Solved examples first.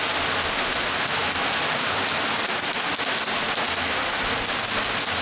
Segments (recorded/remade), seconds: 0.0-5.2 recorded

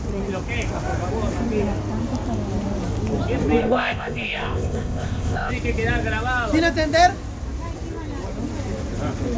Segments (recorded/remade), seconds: 0.0-3.6 recorded; 3.6-5.5 remade; 5.5-9.4 recorded